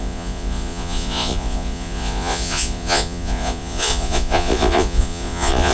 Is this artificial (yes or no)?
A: yes